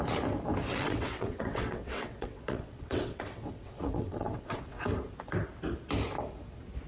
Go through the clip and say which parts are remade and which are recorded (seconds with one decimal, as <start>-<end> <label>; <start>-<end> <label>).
0.0-0.7 recorded; 0.7-4.8 remade; 4.8-6.9 recorded